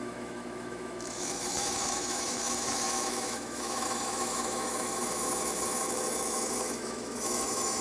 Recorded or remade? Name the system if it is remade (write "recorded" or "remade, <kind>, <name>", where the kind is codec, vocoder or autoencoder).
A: remade, autoencoder, DAC-VAE